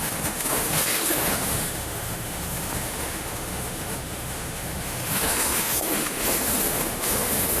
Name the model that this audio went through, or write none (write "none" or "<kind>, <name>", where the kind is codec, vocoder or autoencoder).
autoencoder, DAC-VAE